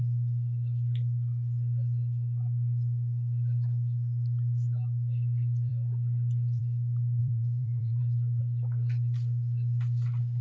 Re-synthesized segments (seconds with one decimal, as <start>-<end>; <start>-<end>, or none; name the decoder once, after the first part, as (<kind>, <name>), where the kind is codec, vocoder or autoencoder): 7.2-8.4 (vocoder, BigVGAN v2)